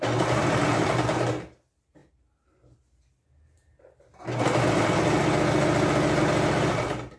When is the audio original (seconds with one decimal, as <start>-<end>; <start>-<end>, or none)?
0.0-7.2

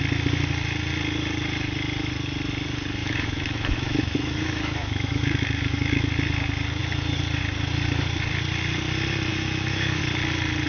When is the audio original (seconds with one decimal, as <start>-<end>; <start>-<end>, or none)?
0.0-3.0; 6.1-9.3; 10.0-10.7

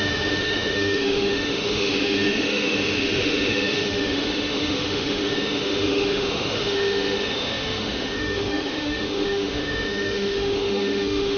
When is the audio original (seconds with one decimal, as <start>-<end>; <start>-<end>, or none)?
none

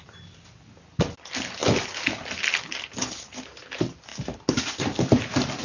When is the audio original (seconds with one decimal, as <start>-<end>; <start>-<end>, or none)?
0.0-5.6